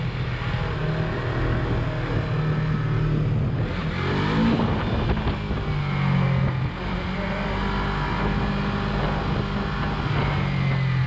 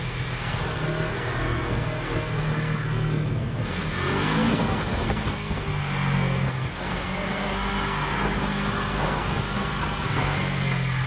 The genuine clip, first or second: first